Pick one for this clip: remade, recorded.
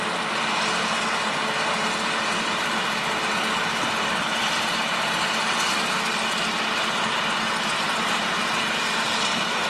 recorded